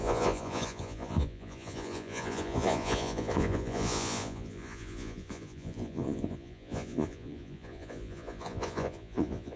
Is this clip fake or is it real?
fake